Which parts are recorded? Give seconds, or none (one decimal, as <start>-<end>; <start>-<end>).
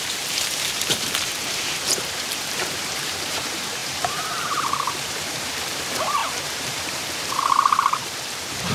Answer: none